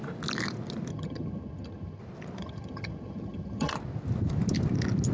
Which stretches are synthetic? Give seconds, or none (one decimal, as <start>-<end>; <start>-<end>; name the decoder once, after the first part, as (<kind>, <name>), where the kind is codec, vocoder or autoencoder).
0.9-2.0 (vocoder, HiFi-GAN); 2.4-3.7